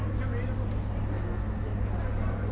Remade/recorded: recorded